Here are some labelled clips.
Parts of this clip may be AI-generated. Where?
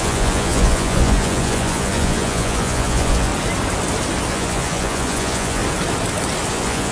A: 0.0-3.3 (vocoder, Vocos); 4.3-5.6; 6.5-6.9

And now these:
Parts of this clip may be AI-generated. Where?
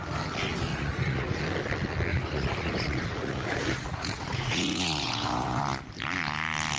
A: 0.7-1.4 (vocoder, Vocos); 2.1-5.6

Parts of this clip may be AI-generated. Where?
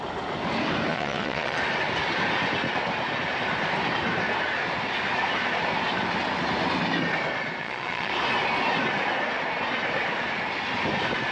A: 0.9-1.6 (vocoder, Vocos); 7.6-8.1